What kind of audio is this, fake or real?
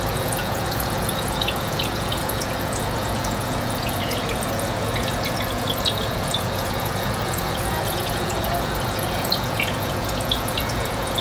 fake